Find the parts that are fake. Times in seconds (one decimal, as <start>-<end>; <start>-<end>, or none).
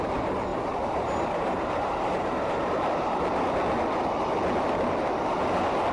0.5-3.2